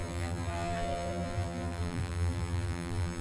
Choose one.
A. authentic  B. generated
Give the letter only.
B